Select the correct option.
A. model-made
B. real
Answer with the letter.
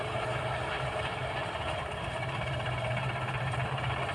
A